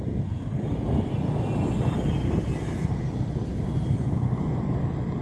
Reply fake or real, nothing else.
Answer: fake